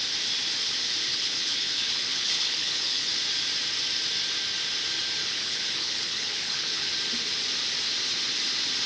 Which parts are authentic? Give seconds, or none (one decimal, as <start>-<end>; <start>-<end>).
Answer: 0.0-1.1; 3.1-5.2; 6.9-8.9